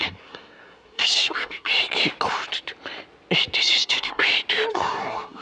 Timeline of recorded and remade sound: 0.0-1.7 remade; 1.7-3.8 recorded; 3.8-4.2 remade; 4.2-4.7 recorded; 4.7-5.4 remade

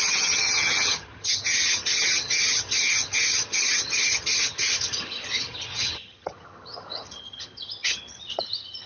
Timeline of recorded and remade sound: 0.0-8.9 remade

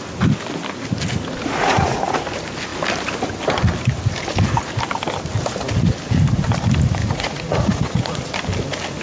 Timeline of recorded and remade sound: 0.0-1.6 recorded; 1.6-2.2 remade; 2.2-7.0 recorded; 7.0-8.2 remade; 8.2-9.0 recorded